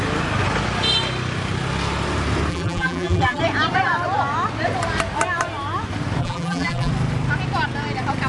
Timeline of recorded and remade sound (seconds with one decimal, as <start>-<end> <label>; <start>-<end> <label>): 0.0-2.5 recorded; 2.5-3.4 remade; 3.4-6.2 recorded; 6.2-6.9 remade; 6.9-8.3 recorded